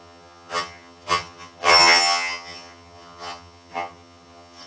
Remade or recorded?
remade